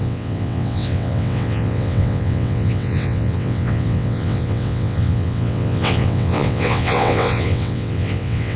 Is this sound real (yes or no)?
no